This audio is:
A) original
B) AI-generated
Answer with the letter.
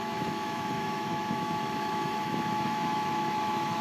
B